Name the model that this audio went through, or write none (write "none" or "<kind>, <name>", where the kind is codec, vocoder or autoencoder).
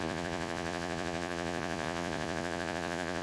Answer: vocoder, Vocos